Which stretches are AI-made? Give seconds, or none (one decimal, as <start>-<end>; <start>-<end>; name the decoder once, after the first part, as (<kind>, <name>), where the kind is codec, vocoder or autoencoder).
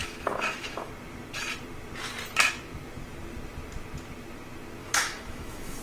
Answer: 0.0-0.9 (autoencoder, DAC-VAE); 4.8-5.8